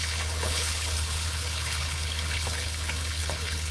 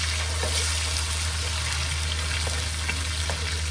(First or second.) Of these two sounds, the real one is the second